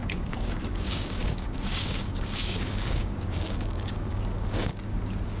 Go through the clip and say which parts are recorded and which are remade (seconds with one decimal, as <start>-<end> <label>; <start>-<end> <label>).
0.0-5.4 remade